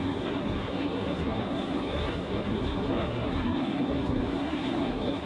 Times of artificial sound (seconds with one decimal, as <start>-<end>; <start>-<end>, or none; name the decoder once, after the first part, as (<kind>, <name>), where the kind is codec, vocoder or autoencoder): 0.0-5.3 (codec, SNAC)